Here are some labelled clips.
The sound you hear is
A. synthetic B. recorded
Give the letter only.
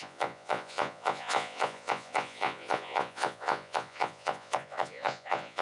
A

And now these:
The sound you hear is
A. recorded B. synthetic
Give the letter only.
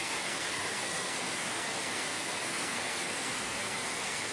B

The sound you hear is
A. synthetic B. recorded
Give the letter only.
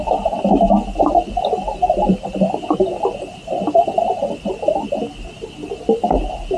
B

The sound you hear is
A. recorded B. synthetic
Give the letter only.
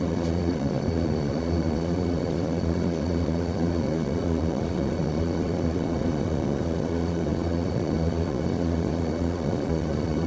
B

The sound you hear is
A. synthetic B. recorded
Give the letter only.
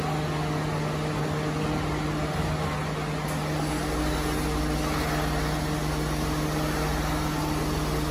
B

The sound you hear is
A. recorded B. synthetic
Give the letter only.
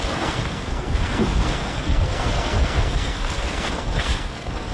B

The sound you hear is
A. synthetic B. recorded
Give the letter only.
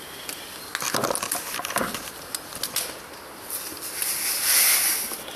B